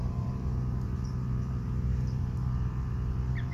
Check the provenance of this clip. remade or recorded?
remade